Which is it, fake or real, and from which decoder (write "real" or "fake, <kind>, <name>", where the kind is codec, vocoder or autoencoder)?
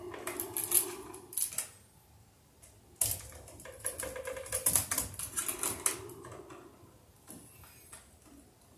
real